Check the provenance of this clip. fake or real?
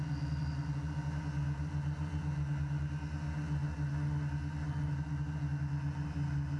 real